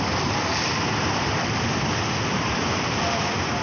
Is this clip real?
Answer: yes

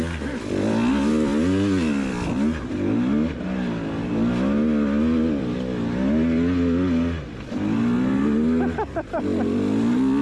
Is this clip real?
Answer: yes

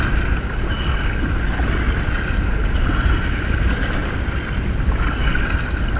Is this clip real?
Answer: yes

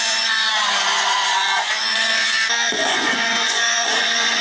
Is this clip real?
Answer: no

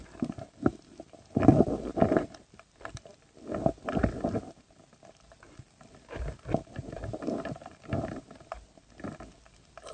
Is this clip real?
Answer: yes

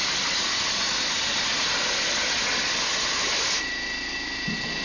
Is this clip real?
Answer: yes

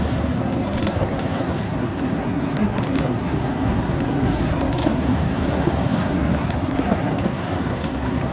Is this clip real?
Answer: no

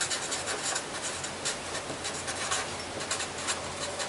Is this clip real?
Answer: yes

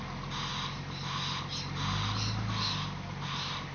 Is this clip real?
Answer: yes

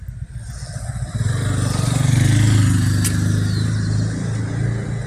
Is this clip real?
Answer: yes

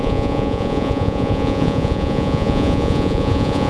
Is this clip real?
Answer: no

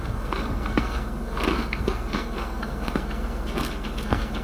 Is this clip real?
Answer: no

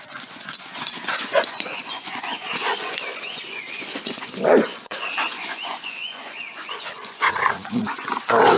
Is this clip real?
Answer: no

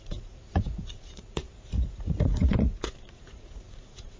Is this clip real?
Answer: no